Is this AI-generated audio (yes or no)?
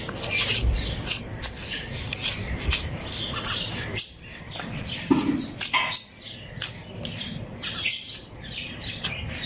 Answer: no